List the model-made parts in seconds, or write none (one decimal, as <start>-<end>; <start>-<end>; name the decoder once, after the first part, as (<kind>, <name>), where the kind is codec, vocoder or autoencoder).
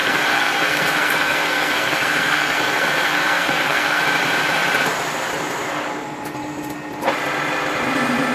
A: 0.0-4.0 (codec, SNAC)